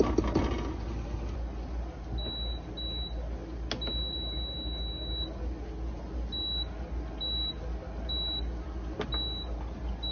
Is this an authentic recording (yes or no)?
yes